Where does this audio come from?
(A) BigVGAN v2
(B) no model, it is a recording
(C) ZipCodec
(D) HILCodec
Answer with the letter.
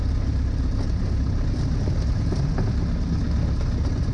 B